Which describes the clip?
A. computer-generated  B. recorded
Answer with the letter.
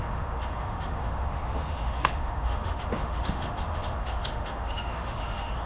A